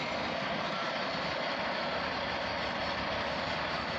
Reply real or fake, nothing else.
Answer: real